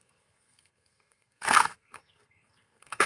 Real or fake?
fake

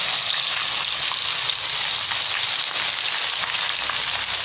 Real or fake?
real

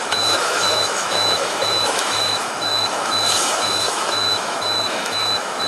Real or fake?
fake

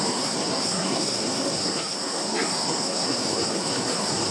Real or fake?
fake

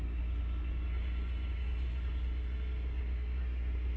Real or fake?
real